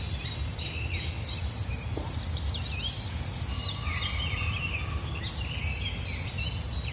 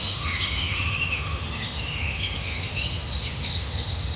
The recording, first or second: first